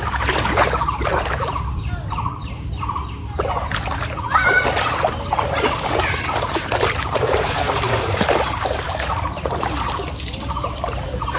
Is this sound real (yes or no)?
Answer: yes